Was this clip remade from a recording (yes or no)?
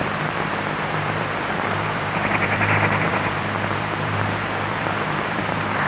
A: yes